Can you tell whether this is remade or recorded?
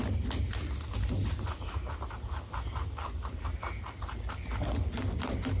recorded